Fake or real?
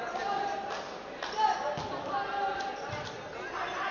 real